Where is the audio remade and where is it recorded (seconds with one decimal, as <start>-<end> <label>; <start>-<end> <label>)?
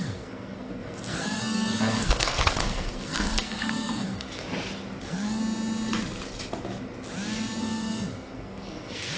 0.0-4.4 remade; 4.4-5.0 recorded; 5.0-5.4 remade; 5.4-7.6 recorded; 7.6-9.2 remade